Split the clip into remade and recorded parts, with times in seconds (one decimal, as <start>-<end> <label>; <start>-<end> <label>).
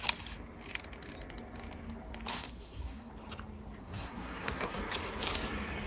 0.0-2.3 recorded; 2.3-3.1 remade; 3.1-3.8 recorded; 3.8-4.8 remade; 4.8-5.9 recorded